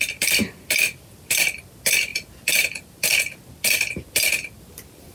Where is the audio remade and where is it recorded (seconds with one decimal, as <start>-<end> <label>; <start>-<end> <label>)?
0.0-5.1 remade